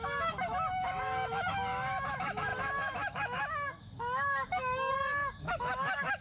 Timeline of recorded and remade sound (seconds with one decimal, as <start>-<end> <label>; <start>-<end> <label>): 0.0-6.2 remade